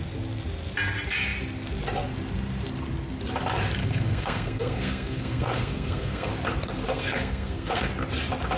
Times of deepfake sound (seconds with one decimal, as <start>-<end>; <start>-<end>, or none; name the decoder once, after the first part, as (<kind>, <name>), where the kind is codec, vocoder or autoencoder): 3.8-6.3 (codec, SNAC); 6.9-7.9